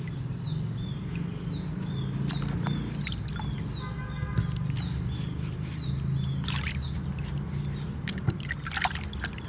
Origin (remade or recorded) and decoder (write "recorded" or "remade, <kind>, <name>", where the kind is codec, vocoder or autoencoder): recorded